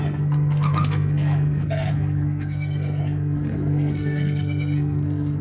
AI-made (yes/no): yes